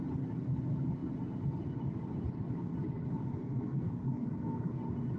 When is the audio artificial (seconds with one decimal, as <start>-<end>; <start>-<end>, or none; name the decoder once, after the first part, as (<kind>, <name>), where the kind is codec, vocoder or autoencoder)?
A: 3.3-4.8 (codec, SNAC)